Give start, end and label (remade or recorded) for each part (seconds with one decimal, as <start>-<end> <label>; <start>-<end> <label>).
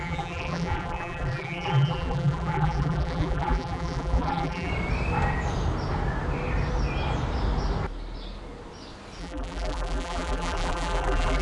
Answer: 0.0-4.7 remade; 4.7-9.2 recorded; 9.2-11.4 remade